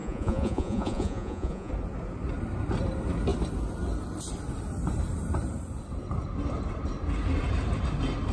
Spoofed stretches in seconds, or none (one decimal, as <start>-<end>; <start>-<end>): 0.0-1.7